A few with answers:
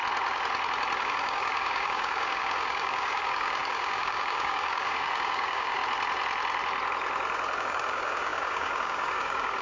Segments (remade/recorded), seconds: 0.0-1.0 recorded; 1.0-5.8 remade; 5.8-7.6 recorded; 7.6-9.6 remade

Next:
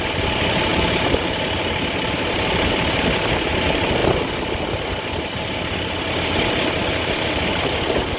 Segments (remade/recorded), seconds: 0.0-0.7 recorded; 0.7-3.5 remade; 3.5-8.2 recorded

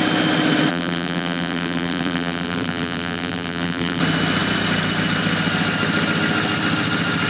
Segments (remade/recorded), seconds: 0.0-0.7 recorded; 0.7-4.0 remade; 4.0-7.3 recorded

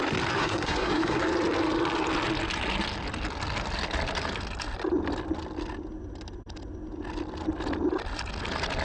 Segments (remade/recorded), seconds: 0.0-0.4 recorded; 0.4-1.2 remade; 1.2-8.8 recorded